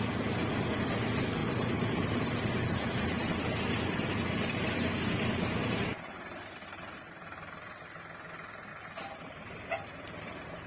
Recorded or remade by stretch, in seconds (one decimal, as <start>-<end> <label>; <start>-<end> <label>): 0.0-1.4 recorded; 1.4-4.9 remade; 4.9-5.9 recorded; 5.9-7.7 remade; 7.7-8.7 recorded; 8.7-10.7 remade